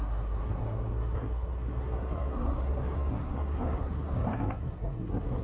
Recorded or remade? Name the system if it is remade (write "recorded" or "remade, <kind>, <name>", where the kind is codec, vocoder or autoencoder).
remade, codec, SNAC